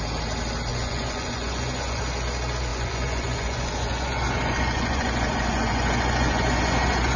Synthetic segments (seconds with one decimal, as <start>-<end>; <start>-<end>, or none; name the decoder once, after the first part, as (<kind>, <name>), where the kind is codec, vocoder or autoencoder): 0.7-2.0 (vocoder, Vocos); 2.7-7.2